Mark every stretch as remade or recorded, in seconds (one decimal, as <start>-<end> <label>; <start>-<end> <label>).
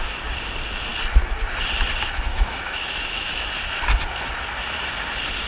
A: 0.0-2.3 recorded; 2.3-3.5 remade; 3.5-5.5 recorded